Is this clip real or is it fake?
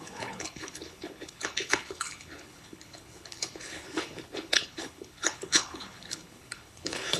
fake